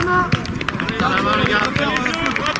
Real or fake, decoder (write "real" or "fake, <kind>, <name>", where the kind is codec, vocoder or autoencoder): real